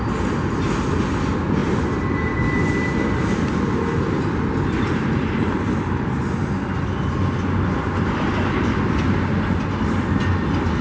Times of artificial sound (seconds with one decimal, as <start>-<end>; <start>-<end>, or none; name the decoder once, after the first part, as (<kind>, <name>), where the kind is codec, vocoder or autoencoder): none